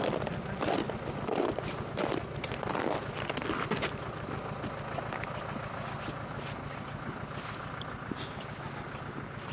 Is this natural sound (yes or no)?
yes